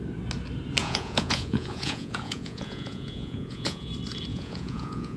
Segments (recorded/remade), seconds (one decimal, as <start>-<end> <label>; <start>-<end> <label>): 0.0-0.8 recorded; 0.8-3.9 remade; 3.9-4.3 recorded; 4.3-5.2 remade